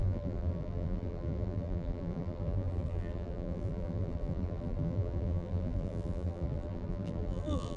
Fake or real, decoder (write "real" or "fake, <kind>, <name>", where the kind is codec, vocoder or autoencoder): fake, vocoder, BigVGAN v2